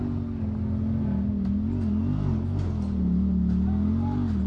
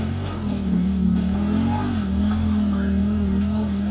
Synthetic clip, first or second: second